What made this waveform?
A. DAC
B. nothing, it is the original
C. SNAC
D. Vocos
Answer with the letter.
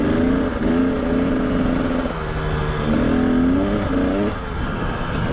B